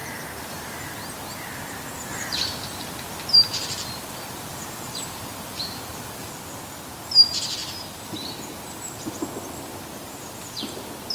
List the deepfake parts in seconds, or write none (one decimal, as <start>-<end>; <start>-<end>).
2.1-6.3